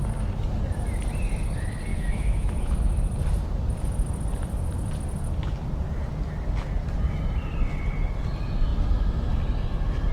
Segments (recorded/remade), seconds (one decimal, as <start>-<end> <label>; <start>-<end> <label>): 0.0-1.9 recorded; 1.9-2.6 remade; 2.6-10.1 recorded